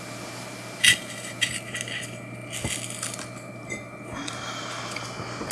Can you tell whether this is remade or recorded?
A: recorded